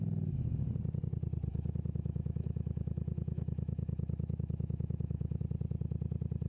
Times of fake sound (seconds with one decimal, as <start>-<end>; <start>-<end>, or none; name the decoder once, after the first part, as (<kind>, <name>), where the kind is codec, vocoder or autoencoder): 1.5-5.4 (autoencoder, DAC-VAE)